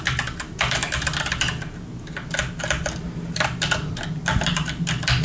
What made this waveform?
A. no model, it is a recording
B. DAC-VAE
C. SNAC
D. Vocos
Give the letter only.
A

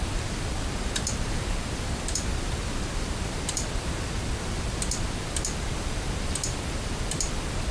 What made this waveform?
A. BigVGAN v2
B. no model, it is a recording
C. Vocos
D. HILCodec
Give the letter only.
A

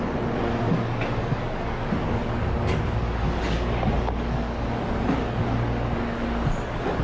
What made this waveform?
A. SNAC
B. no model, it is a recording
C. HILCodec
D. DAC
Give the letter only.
D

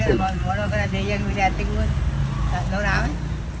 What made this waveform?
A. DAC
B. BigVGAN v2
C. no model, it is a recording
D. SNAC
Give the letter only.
C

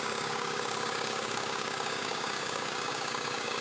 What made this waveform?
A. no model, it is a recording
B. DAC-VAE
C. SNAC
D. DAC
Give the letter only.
D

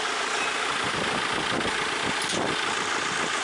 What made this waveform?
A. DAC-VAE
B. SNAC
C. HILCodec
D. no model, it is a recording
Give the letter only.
D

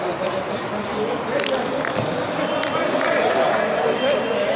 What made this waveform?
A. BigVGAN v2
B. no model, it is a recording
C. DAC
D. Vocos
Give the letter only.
B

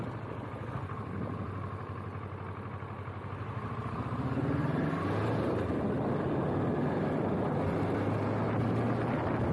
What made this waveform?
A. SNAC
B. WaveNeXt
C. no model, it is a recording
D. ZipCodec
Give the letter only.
C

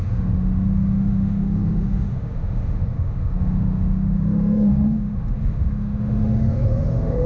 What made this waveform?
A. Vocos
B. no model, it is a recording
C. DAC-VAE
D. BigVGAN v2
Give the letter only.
C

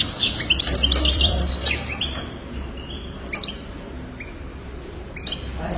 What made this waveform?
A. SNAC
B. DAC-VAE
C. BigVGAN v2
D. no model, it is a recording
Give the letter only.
C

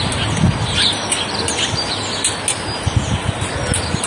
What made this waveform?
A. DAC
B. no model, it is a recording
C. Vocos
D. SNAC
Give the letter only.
B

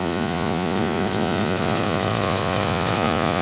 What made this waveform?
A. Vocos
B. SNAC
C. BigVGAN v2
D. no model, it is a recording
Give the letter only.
A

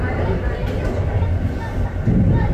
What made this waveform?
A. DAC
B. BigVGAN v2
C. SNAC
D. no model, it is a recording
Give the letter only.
D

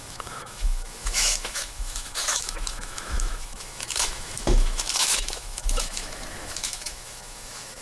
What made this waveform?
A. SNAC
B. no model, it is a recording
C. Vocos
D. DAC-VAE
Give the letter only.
D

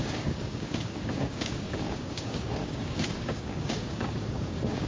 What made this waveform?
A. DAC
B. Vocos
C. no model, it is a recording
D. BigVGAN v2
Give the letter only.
A